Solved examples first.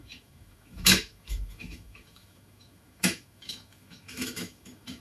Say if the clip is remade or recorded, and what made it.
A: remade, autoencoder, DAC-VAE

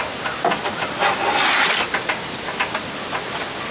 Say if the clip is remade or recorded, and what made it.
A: recorded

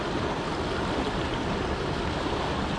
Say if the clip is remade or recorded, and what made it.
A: recorded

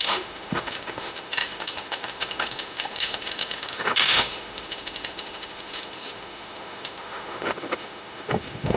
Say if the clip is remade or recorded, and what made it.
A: remade, autoencoder, DAC-VAE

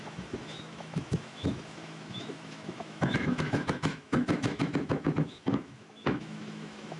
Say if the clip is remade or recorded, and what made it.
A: remade, autoencoder, DAC-VAE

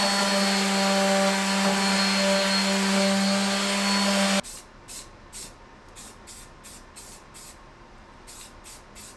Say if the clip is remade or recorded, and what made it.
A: recorded